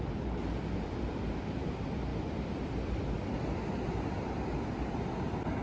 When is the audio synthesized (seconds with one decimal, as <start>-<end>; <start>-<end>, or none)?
none